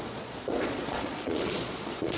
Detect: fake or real fake